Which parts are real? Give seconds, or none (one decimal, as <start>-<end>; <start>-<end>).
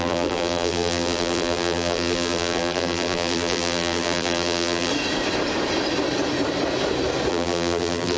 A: 4.9-7.3